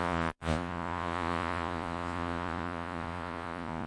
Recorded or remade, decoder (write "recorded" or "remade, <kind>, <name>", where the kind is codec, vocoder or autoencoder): remade, vocoder, Vocos